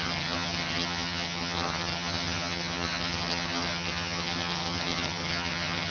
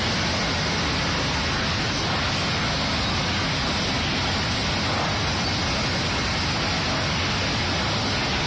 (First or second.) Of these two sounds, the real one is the second